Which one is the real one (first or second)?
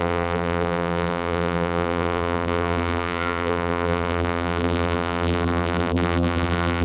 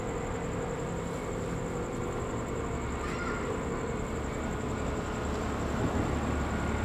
second